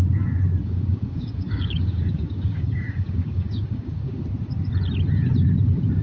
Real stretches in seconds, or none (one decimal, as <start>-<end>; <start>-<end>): 0.0-0.6; 4.2-6.0